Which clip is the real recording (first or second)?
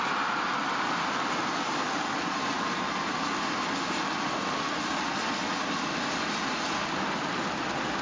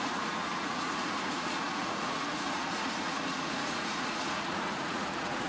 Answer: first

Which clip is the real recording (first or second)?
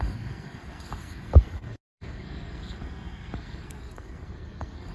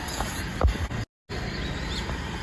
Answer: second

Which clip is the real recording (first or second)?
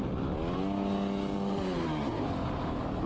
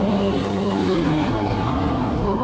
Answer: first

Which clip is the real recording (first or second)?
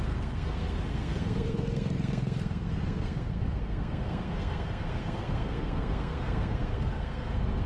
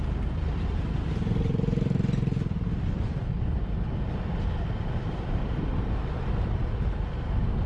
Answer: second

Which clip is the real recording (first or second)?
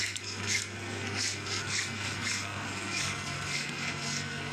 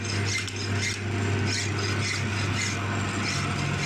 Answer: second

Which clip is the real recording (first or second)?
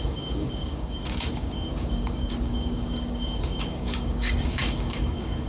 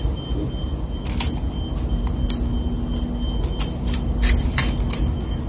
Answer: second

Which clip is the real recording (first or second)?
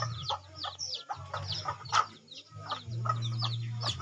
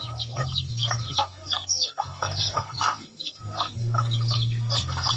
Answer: first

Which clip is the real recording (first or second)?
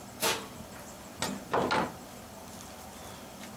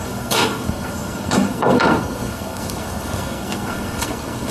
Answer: first